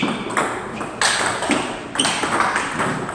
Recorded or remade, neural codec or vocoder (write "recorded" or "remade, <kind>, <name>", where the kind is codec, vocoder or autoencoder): recorded